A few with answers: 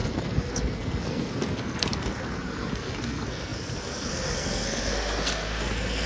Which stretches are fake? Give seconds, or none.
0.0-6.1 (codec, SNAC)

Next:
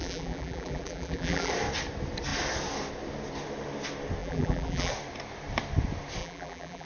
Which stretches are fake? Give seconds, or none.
0.0-1.5 (vocoder, BigVGAN v2); 4.2-4.9; 6.2-6.9

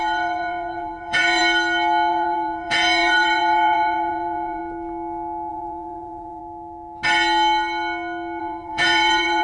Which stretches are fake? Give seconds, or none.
0.0-1.4 (vocoder, Vocos); 2.1-4.6; 5.5-6.4; 8.4-9.4

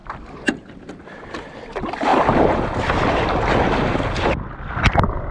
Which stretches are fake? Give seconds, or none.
none

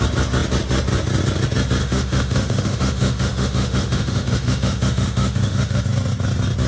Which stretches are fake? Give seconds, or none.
1.8-5.8 (autoencoder, DAC-VAE)

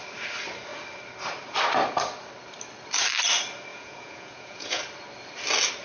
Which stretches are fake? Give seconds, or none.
3.7-4.8 (vocoder, Vocos)

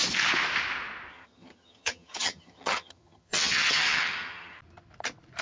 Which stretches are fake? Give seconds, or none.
1.1-4.6 (vocoder, HiFi-GAN)

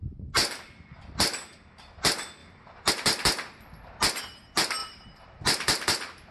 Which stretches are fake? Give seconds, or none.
2.4-2.9 (vocoder, BigVGAN v2); 4.8-6.3